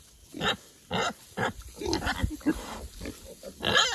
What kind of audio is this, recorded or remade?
recorded